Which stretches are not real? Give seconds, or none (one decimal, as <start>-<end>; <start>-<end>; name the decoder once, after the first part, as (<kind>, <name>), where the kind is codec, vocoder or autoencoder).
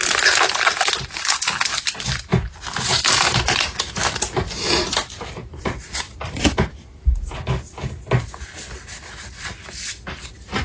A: none